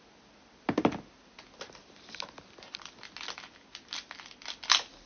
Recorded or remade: recorded